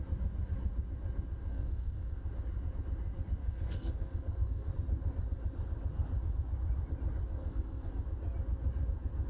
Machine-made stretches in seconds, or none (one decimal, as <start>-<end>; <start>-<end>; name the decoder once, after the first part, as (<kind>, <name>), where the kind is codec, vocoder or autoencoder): 1.5-2.2 (codec, SNAC); 3.4-4.7; 7.3-7.9